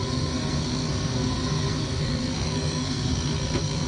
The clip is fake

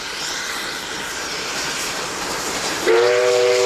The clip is real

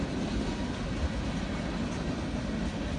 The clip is real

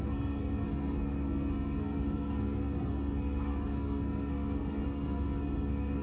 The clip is fake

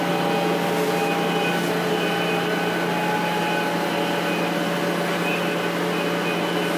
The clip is real